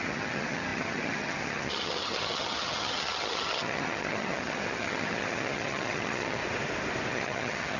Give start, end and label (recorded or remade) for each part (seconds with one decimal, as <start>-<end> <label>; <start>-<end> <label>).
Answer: 0.0-6.4 remade; 6.4-7.1 recorded; 7.1-7.8 remade